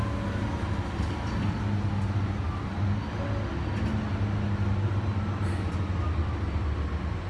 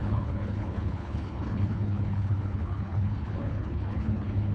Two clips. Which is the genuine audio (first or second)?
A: first